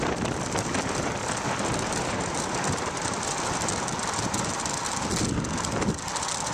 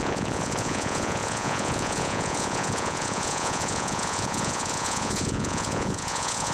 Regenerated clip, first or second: second